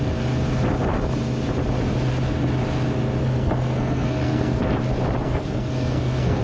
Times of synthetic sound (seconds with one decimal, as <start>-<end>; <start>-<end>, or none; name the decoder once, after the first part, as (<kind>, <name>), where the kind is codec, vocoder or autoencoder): 3.2-4.6 (codec, SNAC); 5.2-6.4